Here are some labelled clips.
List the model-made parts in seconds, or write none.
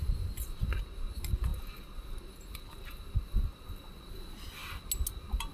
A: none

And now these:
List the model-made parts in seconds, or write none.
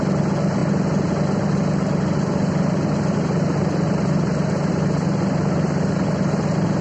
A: none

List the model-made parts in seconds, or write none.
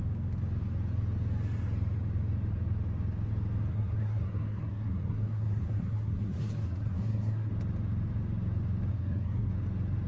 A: 3.7-7.5 (codec, SNAC); 8.9-9.5